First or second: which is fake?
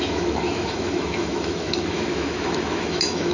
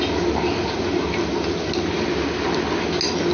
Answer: first